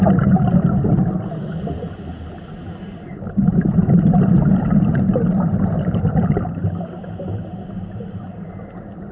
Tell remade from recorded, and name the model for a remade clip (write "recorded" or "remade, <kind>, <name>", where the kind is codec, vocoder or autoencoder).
recorded